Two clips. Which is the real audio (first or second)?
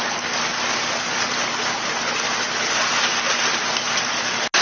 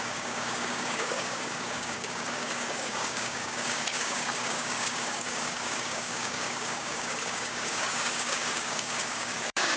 first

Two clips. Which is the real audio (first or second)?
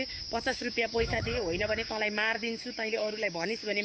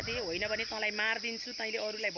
second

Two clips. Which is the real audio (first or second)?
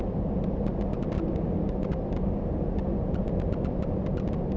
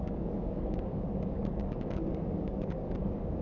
first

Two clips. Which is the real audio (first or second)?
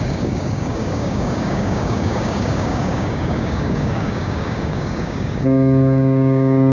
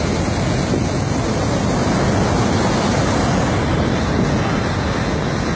second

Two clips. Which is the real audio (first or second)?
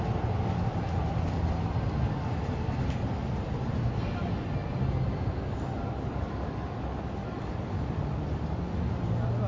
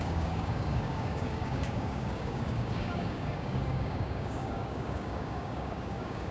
first